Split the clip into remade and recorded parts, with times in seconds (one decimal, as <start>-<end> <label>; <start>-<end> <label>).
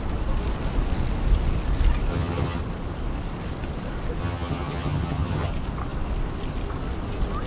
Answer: 0.0-2.1 recorded; 2.1-2.6 remade; 2.6-4.2 recorded; 4.2-5.5 remade; 5.5-7.5 recorded